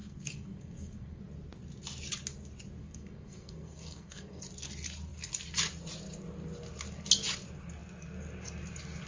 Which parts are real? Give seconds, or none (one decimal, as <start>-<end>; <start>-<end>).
1.2-2.8; 4.4-9.1